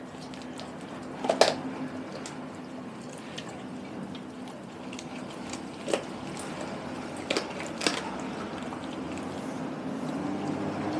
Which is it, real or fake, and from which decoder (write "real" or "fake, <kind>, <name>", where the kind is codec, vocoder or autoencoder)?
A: real